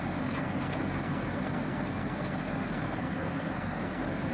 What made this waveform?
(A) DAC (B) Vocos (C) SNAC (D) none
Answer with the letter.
C